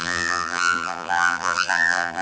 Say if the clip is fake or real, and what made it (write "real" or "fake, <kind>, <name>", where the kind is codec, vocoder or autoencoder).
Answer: fake, vocoder, BigVGAN v2